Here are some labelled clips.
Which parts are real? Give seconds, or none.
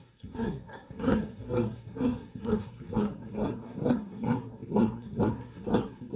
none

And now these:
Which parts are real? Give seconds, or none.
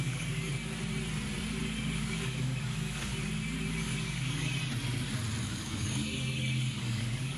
0.5-1.6; 3.1-3.7; 4.5-5.4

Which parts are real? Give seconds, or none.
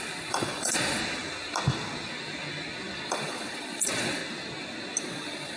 1.0-3.1; 4.2-5.0